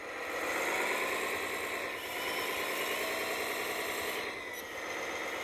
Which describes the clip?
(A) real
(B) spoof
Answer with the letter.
A